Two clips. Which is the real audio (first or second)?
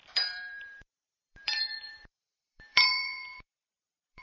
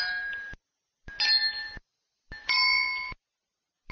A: second